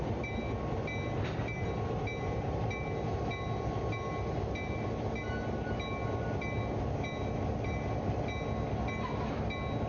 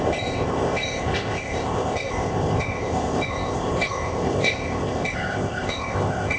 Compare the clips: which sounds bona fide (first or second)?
first